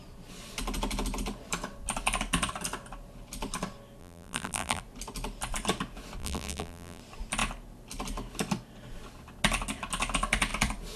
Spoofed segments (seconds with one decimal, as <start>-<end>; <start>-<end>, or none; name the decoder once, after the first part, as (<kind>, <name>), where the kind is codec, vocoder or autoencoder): 4.0-4.8 (vocoder, BigVGAN v2); 6.2-7.0